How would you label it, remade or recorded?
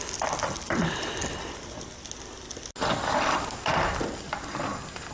recorded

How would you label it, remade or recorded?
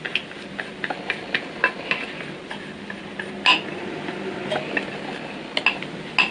recorded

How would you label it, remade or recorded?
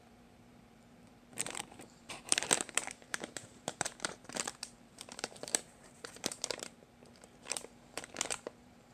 remade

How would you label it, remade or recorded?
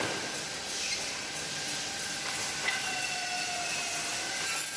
remade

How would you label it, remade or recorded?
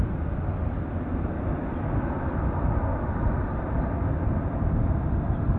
recorded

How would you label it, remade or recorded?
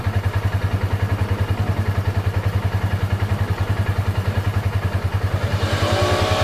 remade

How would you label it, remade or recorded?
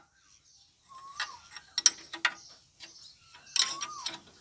recorded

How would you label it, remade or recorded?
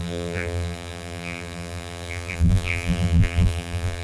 remade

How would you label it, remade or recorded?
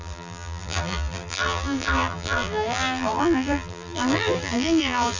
remade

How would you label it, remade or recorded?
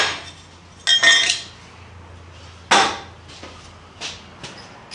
recorded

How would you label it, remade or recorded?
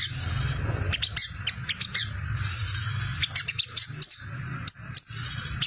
recorded